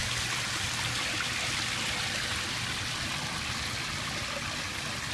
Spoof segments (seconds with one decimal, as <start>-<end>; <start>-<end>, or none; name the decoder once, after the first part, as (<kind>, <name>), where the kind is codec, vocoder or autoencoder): none

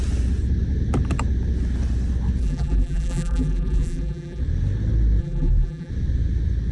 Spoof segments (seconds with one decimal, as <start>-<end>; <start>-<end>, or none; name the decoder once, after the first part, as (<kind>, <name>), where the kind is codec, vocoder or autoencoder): 2.4-4.4 (vocoder, BigVGAN v2); 5.2-5.9

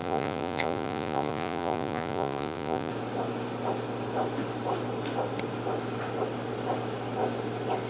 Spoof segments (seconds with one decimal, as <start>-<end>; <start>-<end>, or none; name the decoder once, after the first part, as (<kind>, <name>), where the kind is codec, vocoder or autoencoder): 0.0-2.9 (vocoder, Vocos)

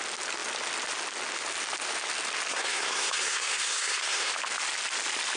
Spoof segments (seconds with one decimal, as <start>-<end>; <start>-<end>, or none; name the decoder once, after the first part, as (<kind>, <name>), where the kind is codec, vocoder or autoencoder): 2.5-4.3 (codec, SNAC)